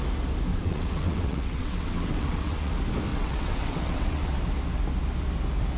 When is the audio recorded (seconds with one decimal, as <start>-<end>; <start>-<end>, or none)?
0.0-0.5; 2.7-3.1; 4.3-5.8